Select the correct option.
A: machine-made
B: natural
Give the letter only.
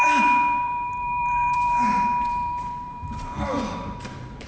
A